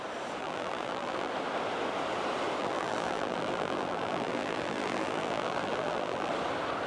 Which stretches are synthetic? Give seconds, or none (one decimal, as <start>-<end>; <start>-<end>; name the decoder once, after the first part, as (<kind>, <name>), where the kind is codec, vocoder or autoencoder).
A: 0.4-1.3 (vocoder, BigVGAN v2); 2.6-6.3